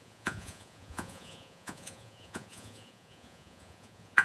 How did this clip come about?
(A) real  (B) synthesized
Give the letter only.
B